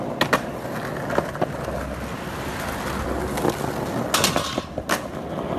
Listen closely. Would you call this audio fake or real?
real